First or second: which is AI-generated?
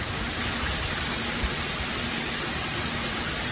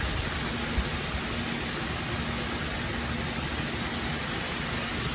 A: first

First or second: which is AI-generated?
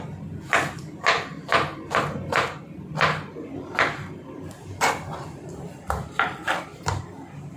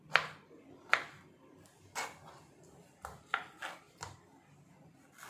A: first